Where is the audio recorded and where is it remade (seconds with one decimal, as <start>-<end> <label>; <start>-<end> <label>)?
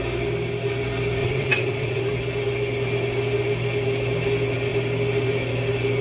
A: 0.0-1.2 recorded; 1.2-2.0 remade; 2.0-6.0 recorded